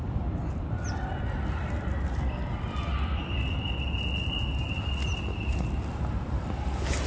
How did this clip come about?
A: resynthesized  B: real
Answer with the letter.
B